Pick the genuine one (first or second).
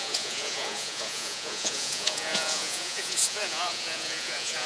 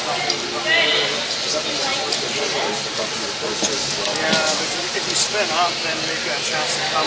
second